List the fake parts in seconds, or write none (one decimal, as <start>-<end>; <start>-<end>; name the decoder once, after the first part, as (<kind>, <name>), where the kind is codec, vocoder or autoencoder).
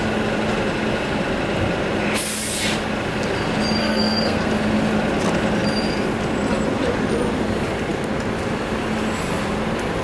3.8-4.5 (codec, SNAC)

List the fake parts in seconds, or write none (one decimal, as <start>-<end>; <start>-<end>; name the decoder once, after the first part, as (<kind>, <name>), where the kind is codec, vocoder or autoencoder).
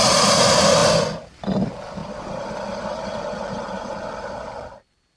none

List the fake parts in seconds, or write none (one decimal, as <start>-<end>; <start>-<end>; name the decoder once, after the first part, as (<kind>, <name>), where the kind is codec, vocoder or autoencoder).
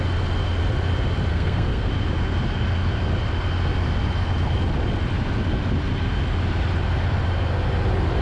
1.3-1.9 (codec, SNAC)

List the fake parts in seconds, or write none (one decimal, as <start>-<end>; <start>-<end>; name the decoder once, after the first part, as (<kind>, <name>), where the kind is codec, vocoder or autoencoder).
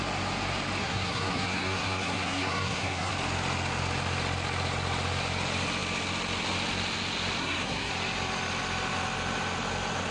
0.8-3.1 (codec, SNAC); 7.4-7.9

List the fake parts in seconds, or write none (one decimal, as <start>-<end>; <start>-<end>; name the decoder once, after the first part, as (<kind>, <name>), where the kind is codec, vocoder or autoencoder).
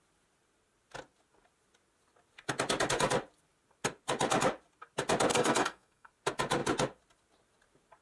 5.3-6.1 (codec, SNAC)